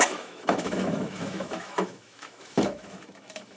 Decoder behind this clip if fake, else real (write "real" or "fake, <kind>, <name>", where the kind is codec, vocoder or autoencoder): fake, autoencoder, DAC-VAE